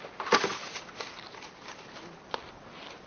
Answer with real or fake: real